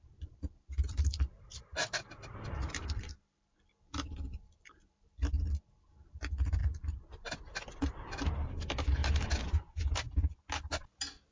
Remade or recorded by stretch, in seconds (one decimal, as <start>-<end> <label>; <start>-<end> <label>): 0.0-9.0 remade; 9.0-11.3 recorded